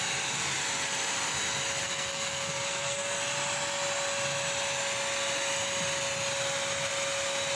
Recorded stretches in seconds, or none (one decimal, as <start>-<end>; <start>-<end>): 0.0-1.8; 3.2-7.6